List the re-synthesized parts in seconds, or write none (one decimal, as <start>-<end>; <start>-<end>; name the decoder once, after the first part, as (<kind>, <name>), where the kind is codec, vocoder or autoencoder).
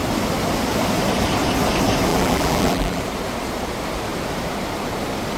2.1-3.0 (vocoder, BigVGAN v2)